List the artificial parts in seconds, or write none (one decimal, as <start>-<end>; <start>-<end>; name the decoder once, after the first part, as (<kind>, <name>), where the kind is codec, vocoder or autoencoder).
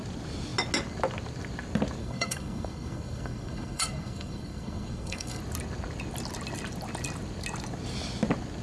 2.0-5.4 (codec, SNAC)